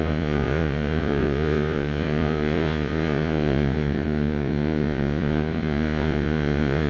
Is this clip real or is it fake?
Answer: fake